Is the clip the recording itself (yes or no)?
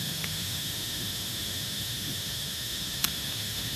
no